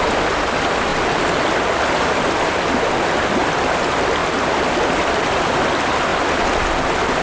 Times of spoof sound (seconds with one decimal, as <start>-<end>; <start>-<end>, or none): none